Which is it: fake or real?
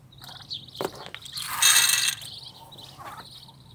real